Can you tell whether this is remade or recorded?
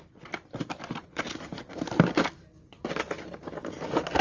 recorded